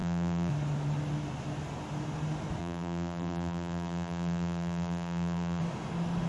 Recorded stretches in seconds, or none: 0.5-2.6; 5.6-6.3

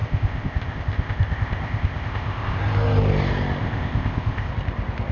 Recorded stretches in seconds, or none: 2.6-3.6; 4.5-5.1

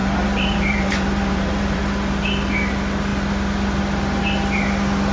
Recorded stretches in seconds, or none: 1.8-5.1

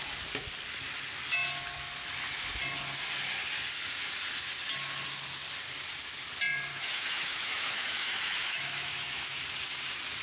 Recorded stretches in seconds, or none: 0.0-6.7; 9.4-10.2

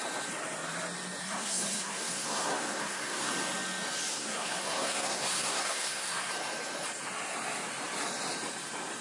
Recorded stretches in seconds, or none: 0.0-1.2; 3.3-4.1; 6.3-9.0

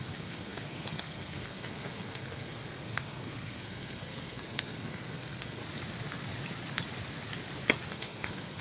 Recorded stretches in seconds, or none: 5.6-7.9

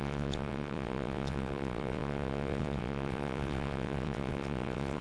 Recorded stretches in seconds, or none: none

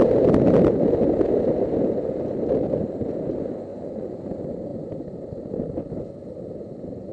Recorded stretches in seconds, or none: 0.0-3.7; 4.2-7.1